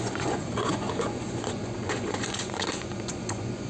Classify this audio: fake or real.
fake